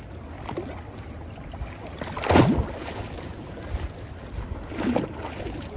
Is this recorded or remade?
recorded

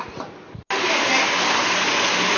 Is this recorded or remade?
recorded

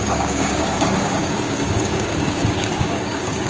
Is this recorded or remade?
remade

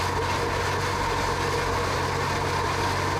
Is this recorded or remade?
recorded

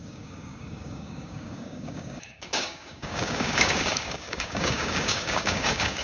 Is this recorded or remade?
remade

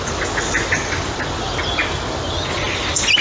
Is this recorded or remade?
recorded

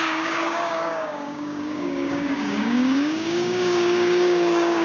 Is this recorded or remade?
remade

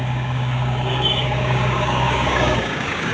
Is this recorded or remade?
remade